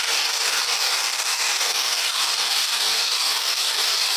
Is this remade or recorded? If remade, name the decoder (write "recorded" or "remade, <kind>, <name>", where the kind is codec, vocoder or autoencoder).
remade, codec, DAC